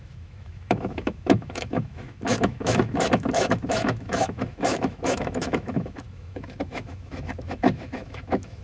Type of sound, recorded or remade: remade